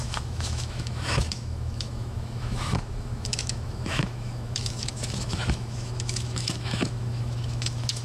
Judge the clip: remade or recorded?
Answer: remade